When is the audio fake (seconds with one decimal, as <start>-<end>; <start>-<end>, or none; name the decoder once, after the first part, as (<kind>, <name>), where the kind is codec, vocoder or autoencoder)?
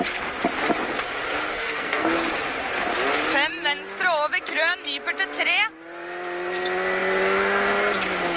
1.5-2.1 (codec, SNAC)